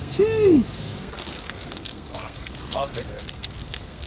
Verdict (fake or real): fake